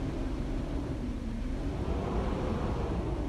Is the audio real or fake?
real